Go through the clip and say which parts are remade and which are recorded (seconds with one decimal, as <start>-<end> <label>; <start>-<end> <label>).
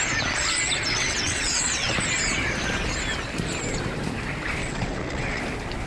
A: 0.0-0.9 recorded; 0.9-2.0 remade; 2.0-4.6 recorded; 4.6-5.4 remade; 5.4-5.9 recorded